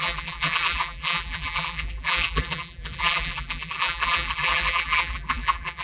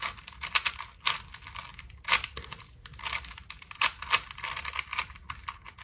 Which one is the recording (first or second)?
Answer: second